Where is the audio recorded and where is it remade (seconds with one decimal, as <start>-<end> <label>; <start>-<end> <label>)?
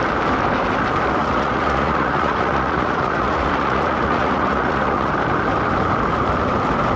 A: 0.0-1.2 recorded; 1.2-5.1 remade; 5.1-7.0 recorded